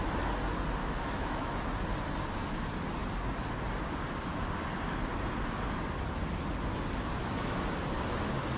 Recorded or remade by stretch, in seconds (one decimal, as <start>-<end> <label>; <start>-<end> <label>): 0.0-0.8 recorded; 0.8-1.6 remade; 1.6-8.6 recorded